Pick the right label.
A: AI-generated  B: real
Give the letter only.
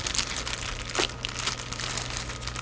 B